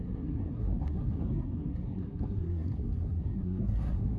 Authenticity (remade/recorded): remade